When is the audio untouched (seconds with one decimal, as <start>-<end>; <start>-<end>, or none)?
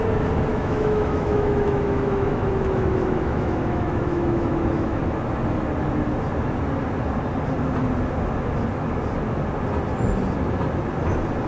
0.0-0.5; 5.0-11.5